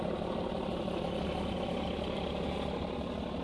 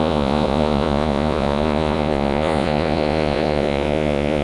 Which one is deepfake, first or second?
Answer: second